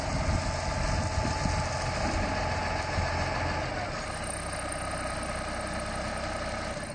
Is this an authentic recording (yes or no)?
yes